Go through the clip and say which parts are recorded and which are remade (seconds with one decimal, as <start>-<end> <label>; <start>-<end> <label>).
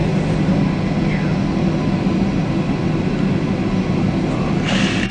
0.0-5.1 recorded